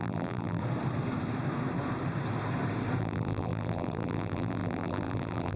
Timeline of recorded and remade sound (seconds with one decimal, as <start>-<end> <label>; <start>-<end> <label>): 0.0-0.6 remade; 0.6-3.0 recorded; 3.0-5.6 remade